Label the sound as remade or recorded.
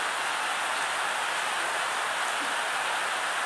recorded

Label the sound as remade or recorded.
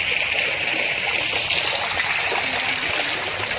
recorded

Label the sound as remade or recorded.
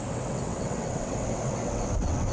remade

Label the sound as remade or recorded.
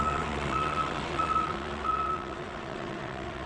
remade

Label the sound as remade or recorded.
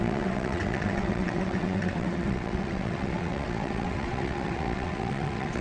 remade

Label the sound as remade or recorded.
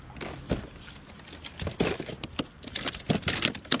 recorded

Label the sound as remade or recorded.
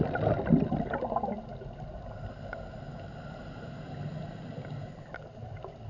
recorded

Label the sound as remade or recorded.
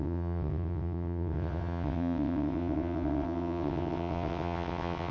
remade